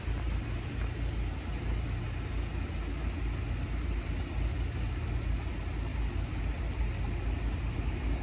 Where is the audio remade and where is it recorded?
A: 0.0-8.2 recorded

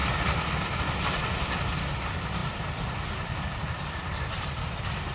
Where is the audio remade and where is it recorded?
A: 0.0-5.1 recorded